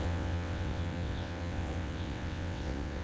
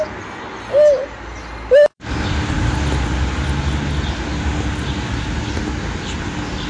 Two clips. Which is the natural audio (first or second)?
second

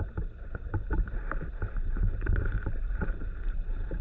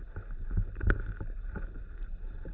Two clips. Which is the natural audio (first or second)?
second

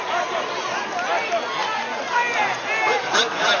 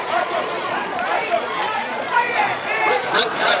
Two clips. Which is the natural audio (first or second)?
first